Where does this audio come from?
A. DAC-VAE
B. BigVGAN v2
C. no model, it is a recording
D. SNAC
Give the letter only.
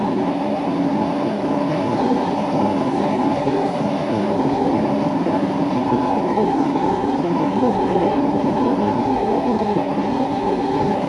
D